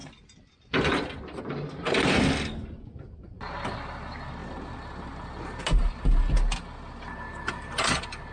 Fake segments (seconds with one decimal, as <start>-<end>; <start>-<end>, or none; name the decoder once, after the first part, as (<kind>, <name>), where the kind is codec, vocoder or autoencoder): 0.0-1.4 (vocoder, BigVGAN v2); 4.4-6.0